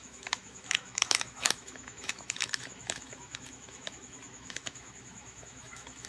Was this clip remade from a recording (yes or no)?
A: yes